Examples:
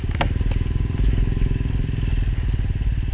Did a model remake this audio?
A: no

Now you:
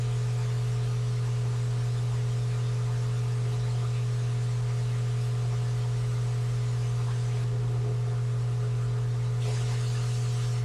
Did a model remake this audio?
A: no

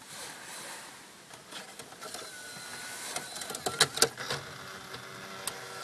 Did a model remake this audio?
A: no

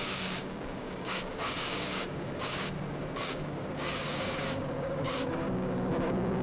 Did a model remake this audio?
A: yes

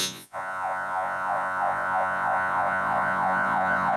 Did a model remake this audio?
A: yes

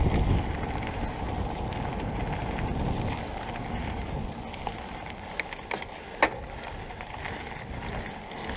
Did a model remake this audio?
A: no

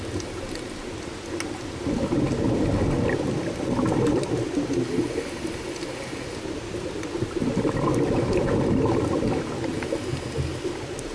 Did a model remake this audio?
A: no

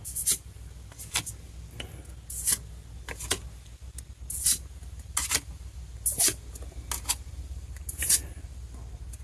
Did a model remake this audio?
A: no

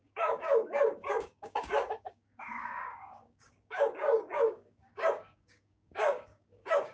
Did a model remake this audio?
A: yes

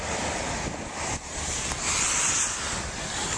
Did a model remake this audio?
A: no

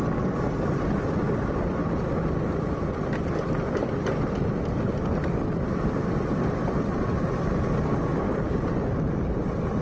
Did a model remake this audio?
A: no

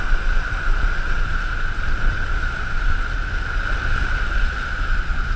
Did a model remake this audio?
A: no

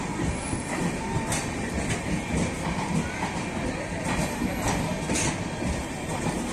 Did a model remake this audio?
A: no